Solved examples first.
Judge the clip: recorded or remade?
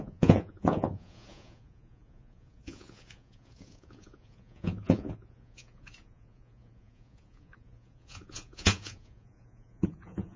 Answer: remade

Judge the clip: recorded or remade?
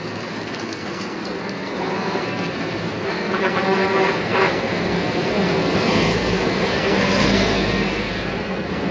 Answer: remade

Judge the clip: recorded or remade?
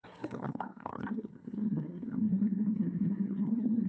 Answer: remade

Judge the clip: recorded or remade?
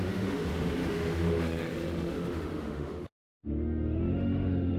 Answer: remade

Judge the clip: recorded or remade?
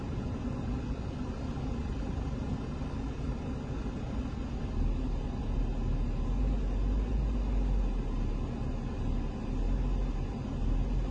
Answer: recorded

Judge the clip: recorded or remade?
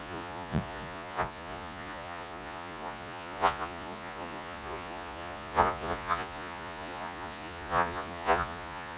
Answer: remade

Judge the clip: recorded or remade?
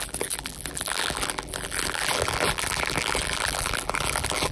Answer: remade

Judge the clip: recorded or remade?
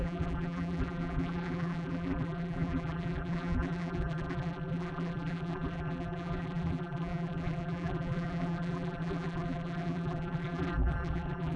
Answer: remade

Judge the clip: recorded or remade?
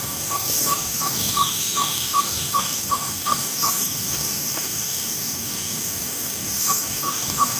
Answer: remade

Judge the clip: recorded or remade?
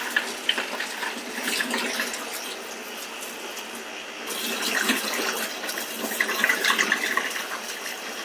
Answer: recorded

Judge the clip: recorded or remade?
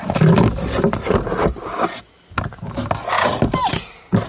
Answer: recorded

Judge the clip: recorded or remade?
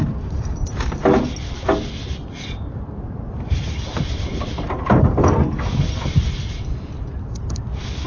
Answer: recorded